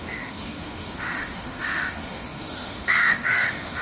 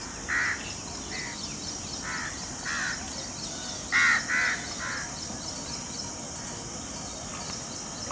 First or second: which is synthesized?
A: first